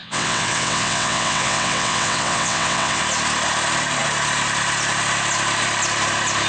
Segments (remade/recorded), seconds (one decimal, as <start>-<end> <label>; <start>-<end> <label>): 0.0-3.0 remade; 3.0-6.5 recorded